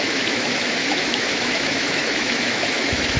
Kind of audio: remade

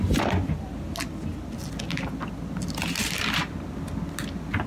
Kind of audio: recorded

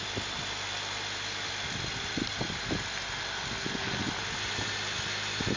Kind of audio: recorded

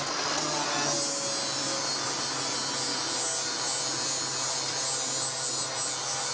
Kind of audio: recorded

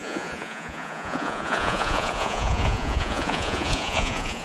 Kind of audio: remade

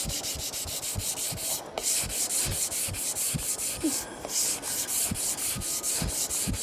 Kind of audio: recorded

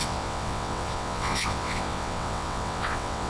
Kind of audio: remade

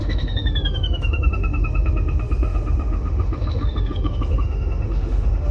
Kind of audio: remade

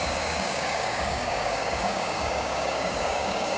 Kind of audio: remade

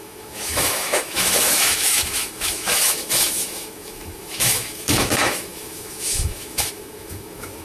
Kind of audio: remade